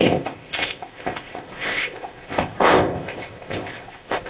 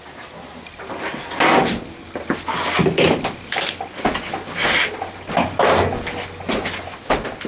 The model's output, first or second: first